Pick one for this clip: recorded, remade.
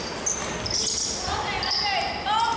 recorded